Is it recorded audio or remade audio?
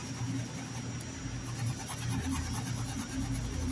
recorded